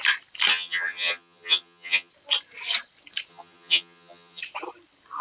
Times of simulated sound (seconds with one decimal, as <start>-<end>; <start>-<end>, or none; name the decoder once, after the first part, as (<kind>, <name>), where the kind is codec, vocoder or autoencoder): 0.5-2.1 (vocoder, HiFi-GAN); 3.3-4.4